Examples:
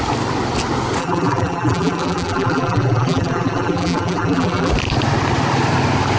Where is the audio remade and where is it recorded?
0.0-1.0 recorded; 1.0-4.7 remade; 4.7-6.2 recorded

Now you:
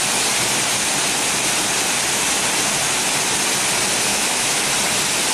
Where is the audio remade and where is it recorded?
0.0-4.1 recorded; 4.1-4.6 remade; 4.6-5.3 recorded